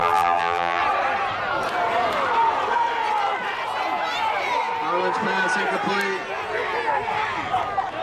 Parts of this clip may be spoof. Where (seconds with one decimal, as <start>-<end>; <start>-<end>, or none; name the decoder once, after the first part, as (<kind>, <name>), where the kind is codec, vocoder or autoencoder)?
0.0-0.8 (vocoder, BigVGAN v2)